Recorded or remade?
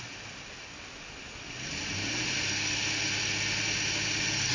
recorded